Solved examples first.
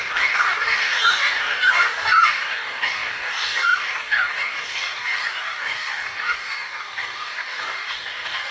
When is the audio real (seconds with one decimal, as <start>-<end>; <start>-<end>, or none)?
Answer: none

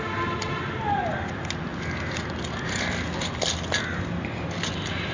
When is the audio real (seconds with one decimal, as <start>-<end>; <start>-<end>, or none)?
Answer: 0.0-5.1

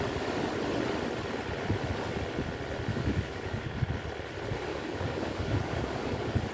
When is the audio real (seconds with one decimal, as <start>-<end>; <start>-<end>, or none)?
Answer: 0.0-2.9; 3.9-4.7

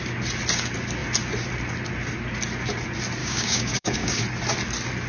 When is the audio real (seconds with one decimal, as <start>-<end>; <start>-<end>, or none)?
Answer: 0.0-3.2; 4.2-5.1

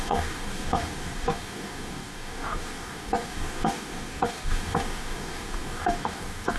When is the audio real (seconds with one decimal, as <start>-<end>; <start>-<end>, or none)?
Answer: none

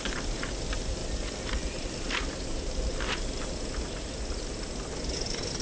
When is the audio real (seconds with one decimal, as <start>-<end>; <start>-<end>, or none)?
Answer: 0.0-5.6

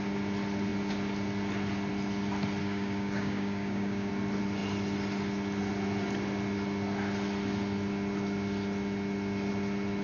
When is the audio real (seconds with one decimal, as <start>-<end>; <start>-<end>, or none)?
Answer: 0.0-2.6; 4.1-10.0